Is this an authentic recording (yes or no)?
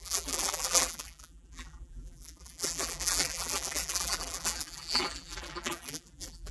no